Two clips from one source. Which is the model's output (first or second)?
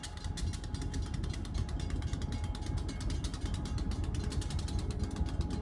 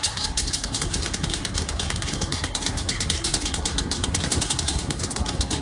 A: second